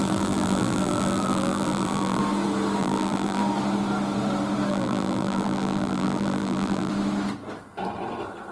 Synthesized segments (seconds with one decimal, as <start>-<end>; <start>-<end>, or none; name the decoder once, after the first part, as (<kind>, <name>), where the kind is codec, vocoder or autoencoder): 0.0-2.2 (vocoder, BigVGAN v2); 2.8-3.4; 4.7-6.9